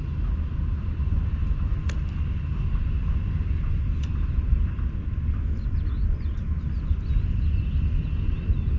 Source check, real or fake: real